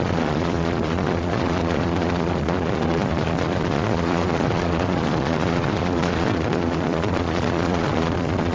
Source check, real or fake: fake